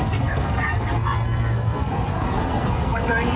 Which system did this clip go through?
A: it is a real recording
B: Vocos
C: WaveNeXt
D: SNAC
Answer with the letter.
D